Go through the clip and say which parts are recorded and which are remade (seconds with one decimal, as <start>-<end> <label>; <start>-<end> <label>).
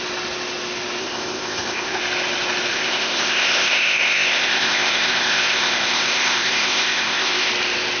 0.0-1.0 recorded; 1.0-2.0 remade; 2.0-2.7 recorded; 2.7-7.5 remade; 7.5-8.0 recorded